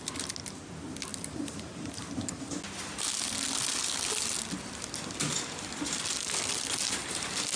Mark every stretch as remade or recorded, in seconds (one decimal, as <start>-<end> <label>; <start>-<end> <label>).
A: 0.0-1.1 recorded; 1.1-2.0 remade; 2.0-7.6 recorded